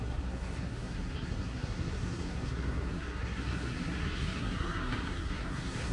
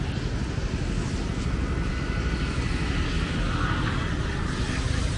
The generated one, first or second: first